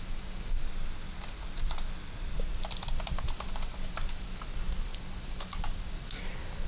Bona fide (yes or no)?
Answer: yes